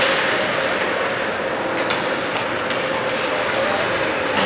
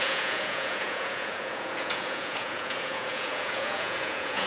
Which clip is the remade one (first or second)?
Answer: second